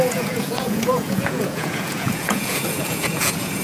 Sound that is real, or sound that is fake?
fake